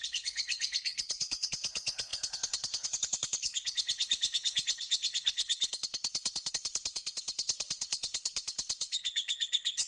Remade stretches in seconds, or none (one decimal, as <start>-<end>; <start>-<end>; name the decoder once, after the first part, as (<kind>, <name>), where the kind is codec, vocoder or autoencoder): 0.0-9.9 (codec, HILCodec)